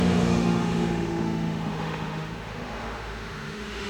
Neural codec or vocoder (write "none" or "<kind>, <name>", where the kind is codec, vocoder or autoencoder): autoencoder, DAC-VAE